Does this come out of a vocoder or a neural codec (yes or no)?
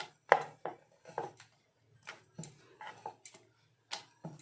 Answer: no